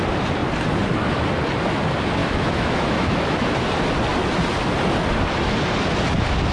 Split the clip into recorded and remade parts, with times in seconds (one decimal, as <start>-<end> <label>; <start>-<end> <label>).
0.0-2.2 recorded; 2.2-3.5 remade; 3.5-6.5 recorded